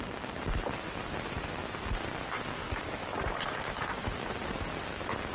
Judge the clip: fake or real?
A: real